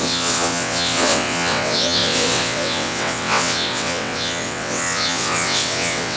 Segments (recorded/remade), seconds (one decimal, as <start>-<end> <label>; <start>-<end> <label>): 0.0-6.2 remade